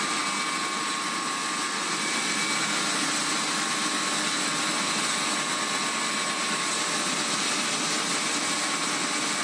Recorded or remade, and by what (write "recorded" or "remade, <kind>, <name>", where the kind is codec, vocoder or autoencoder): recorded